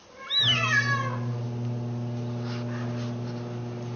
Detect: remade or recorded recorded